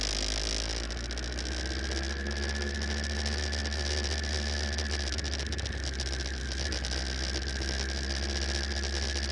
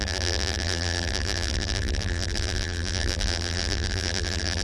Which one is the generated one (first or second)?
second